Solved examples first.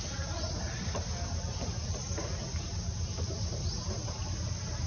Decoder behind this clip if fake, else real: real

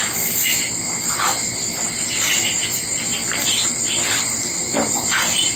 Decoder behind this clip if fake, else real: fake, vocoder, BigVGAN v2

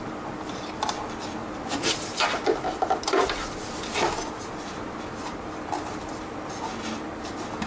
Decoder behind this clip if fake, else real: fake, vocoder, BigVGAN v2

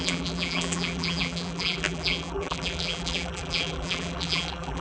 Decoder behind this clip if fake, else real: fake, vocoder, BigVGAN v2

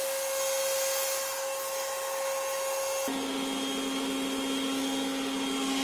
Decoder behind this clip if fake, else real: real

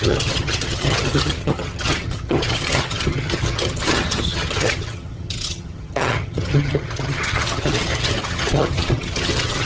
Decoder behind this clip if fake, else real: fake, vocoder, HiFi-GAN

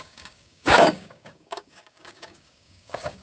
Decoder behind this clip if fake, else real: fake, codec, DAC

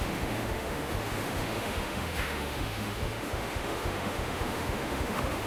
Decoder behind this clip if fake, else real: fake, autoencoder, DAC-VAE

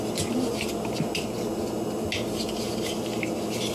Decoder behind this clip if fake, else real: real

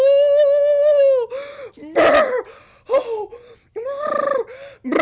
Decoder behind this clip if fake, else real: real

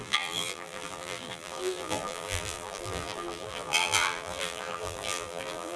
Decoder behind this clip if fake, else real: fake, vocoder, BigVGAN v2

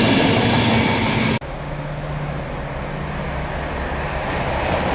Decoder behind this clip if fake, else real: real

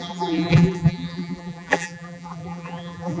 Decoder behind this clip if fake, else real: fake, vocoder, BigVGAN v2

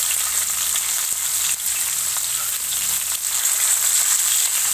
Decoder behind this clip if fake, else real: real